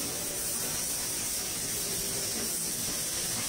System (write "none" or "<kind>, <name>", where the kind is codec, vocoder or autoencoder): vocoder, BigVGAN v2